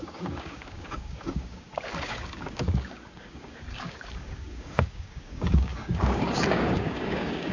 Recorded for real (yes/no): no